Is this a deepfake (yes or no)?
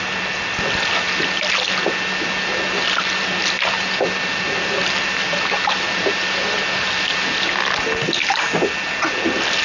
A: no